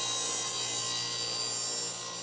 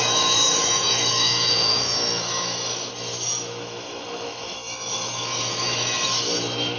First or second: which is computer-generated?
second